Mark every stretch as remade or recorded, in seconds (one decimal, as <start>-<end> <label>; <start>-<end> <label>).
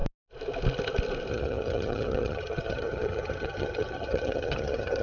0.0-1.3 recorded; 1.3-5.0 remade